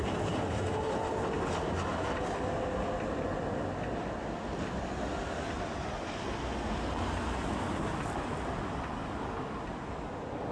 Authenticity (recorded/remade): recorded